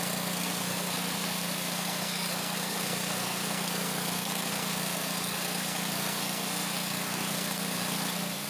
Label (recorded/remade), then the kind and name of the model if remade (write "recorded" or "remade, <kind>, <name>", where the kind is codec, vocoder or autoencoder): remade, codec, SNAC